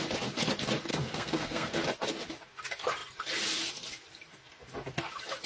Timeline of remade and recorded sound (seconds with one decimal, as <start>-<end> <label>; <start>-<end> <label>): 0.0-0.9 recorded; 0.9-1.7 remade; 1.7-5.5 recorded